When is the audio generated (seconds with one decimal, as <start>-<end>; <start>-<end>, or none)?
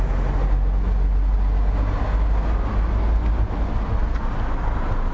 none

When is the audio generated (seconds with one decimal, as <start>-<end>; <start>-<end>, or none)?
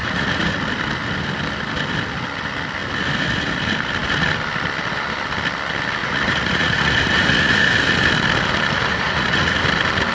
0.0-0.6; 6.0-7.6; 8.9-9.6